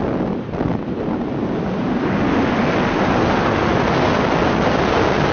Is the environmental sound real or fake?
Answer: real